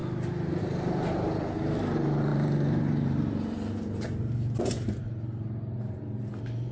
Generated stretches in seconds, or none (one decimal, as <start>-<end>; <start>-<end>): 0.6-6.7